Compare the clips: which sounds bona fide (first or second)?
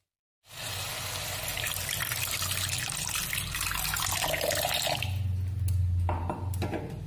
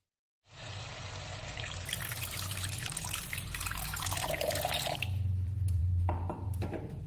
first